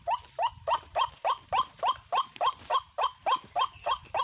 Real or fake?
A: fake